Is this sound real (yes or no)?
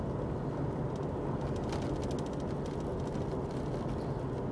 yes